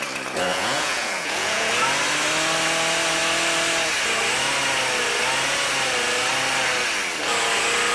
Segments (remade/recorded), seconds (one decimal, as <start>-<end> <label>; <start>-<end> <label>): 0.0-0.5 recorded; 0.5-1.7 remade; 1.7-7.9 recorded